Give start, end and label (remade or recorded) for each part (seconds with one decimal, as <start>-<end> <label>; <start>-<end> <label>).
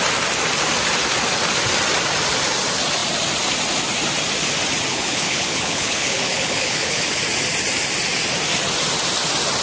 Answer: 0.0-4.9 recorded; 4.9-7.2 remade; 7.2-9.6 recorded